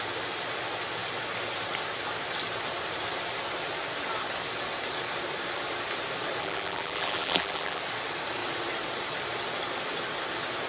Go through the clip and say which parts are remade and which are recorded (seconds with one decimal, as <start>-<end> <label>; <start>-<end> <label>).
0.0-6.4 recorded; 6.4-7.8 remade; 7.8-10.7 recorded